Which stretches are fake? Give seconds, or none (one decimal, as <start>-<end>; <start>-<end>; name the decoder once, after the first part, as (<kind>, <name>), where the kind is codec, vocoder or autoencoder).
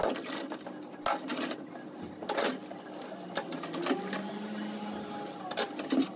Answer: none